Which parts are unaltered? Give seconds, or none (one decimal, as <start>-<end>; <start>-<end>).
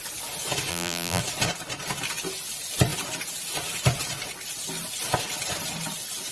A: 0.0-0.7; 1.2-6.3